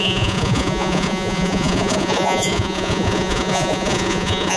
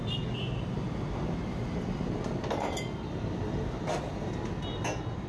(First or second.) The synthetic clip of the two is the first